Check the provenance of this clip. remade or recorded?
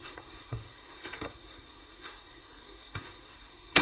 remade